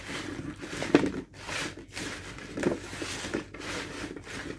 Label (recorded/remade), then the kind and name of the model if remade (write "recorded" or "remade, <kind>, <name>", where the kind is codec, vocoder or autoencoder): recorded